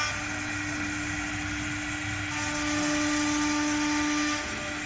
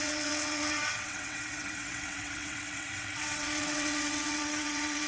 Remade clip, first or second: second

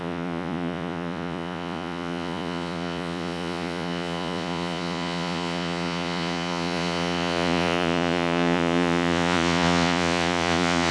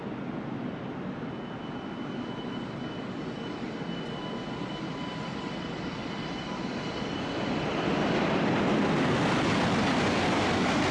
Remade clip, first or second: first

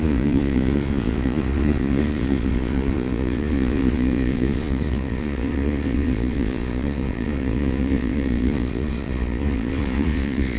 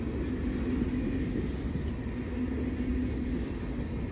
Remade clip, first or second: first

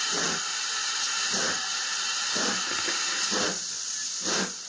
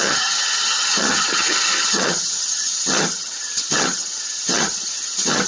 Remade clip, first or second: second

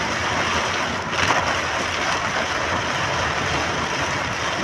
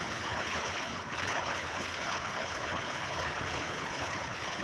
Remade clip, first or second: second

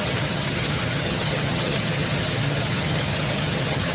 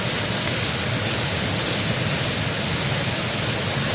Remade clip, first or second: first